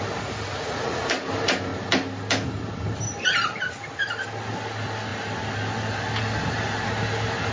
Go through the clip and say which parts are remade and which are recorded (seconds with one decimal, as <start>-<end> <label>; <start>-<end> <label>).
0.0-0.5 recorded; 0.5-1.1 remade; 1.1-7.5 recorded